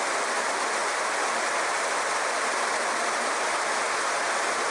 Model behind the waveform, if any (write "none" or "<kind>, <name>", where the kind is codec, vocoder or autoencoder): none